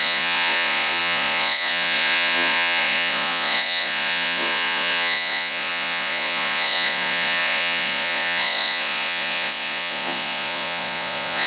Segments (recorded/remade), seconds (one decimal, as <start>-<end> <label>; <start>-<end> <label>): 0.0-11.5 remade